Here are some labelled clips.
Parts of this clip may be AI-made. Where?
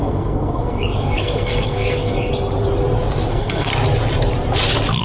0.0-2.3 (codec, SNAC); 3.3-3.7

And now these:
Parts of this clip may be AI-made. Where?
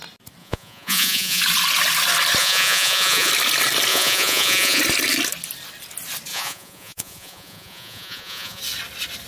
0.4-1.4 (vocoder, Vocos); 2.4-3.3; 3.9-4.8; 6.3-8.6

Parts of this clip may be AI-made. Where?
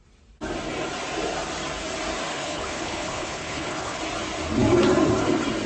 2.3-4.0 (codec, HILCodec)